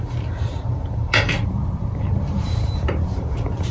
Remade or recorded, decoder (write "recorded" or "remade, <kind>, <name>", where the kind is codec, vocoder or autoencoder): remade, vocoder, BigVGAN v2